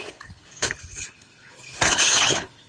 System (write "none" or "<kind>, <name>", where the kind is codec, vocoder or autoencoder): codec, HILCodec